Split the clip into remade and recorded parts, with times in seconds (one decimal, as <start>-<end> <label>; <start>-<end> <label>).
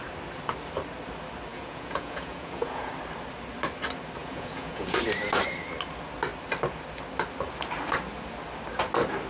0.0-1.5 recorded; 1.5-2.9 remade; 2.9-4.2 recorded; 4.2-5.0 remade; 5.0-9.3 recorded